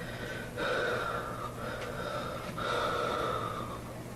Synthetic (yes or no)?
no